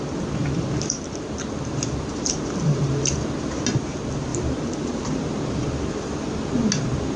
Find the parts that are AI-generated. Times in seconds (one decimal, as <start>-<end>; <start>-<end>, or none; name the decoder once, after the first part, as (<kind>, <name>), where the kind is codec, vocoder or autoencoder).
0.4-3.1 (vocoder, BigVGAN v2); 4.3-5.0